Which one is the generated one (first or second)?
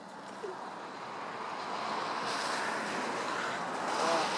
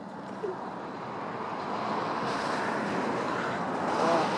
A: second